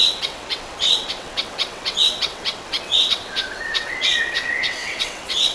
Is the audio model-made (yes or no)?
yes